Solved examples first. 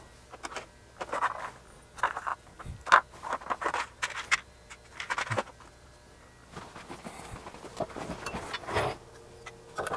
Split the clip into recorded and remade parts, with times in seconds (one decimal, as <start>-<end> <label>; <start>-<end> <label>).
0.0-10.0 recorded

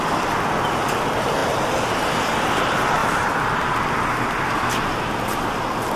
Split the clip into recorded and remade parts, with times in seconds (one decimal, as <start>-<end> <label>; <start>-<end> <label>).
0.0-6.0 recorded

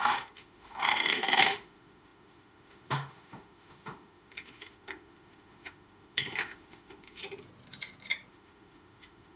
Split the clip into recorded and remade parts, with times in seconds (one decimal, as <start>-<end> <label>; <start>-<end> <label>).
0.0-7.2 remade; 7.2-8.3 recorded; 8.3-9.4 remade

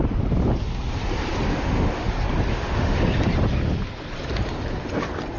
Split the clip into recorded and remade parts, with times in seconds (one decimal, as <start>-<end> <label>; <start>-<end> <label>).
0.0-1.5 recorded; 1.5-2.1 remade; 2.1-2.5 recorded; 2.5-3.0 remade; 3.0-5.4 recorded